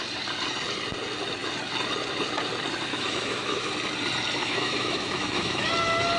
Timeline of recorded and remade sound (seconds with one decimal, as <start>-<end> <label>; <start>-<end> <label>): 0.0-2.9 recorded; 2.9-3.7 remade; 3.7-4.4 recorded; 4.4-5.7 remade; 5.7-6.2 recorded